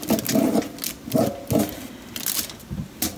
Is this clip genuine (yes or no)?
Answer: yes